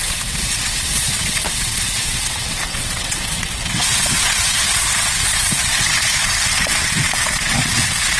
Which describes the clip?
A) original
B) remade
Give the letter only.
B